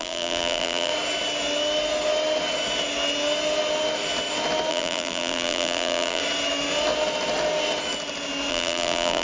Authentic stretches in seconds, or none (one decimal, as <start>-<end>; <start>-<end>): 0.9-4.7; 6.2-8.5